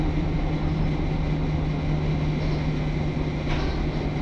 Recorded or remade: recorded